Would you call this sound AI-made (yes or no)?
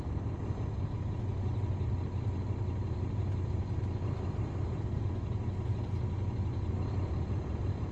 no